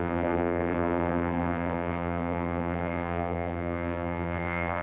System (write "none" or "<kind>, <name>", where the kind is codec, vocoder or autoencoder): vocoder, BigVGAN v2